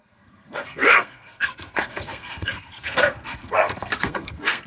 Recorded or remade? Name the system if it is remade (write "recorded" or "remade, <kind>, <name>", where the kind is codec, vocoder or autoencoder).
remade, codec, SNAC